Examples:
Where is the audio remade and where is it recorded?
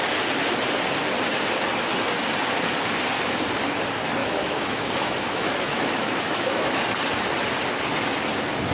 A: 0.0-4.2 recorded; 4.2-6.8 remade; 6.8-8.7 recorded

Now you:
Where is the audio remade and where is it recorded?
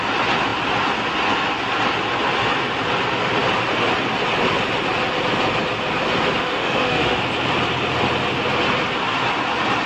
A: 0.0-6.4 recorded; 6.4-7.2 remade; 7.2-9.9 recorded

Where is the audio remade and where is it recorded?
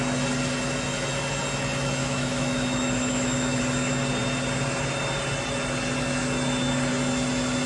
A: 0.0-2.0 recorded; 2.0-3.6 remade; 3.6-7.7 recorded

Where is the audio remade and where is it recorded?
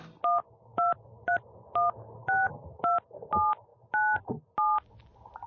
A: 0.0-0.4 recorded; 0.4-1.3 remade; 1.3-2.2 recorded; 2.2-2.8 remade; 2.8-5.5 recorded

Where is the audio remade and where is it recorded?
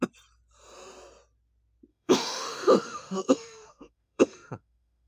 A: 0.0-1.9 recorded; 1.9-5.1 remade